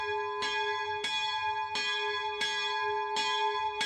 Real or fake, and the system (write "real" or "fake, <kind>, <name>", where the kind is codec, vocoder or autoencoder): real